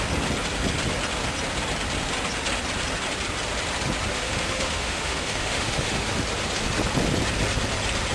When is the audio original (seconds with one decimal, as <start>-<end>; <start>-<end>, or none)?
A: 0.0-4.1; 6.1-8.1